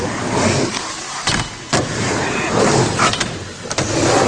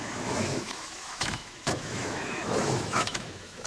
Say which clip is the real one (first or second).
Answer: first